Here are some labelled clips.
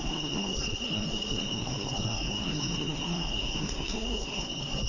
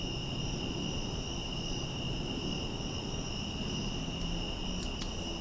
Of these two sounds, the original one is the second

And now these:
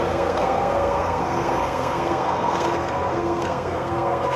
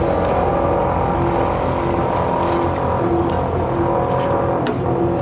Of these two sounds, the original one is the second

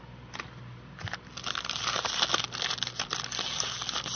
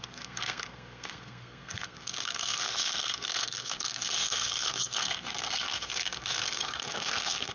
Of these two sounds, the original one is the first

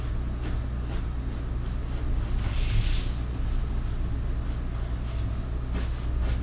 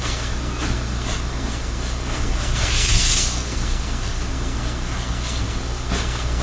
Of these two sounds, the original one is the first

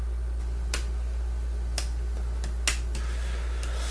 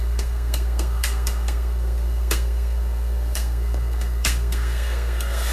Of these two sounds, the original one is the first